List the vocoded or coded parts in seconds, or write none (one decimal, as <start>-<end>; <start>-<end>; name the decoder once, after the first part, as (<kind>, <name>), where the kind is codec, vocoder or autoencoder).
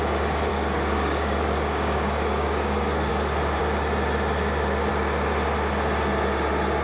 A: 0.5-3.1 (codec, DAC)